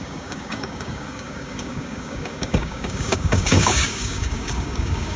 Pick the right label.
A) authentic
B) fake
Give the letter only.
B